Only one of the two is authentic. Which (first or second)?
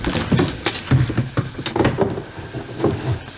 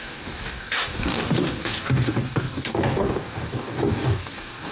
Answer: first